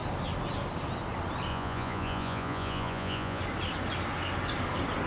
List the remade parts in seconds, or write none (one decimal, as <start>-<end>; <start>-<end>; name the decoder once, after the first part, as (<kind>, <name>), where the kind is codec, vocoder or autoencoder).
1.5-3.4 (vocoder, Vocos)